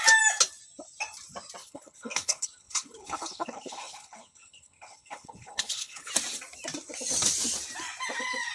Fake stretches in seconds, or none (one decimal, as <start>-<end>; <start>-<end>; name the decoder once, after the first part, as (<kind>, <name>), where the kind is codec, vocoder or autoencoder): 1.6-6.1 (codec, HILCodec)